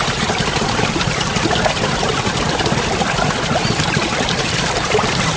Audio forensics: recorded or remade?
remade